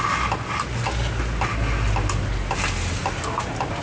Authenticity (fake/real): real